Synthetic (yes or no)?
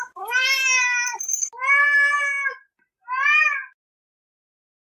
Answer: no